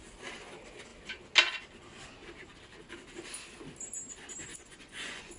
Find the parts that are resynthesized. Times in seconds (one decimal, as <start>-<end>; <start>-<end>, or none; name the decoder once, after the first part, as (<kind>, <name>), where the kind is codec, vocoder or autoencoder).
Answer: 4.5-5.4 (vocoder, Vocos)